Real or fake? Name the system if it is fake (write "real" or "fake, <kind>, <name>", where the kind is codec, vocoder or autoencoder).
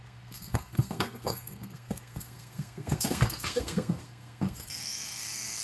fake, codec, SNAC